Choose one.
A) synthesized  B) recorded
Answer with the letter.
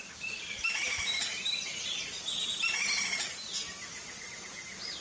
B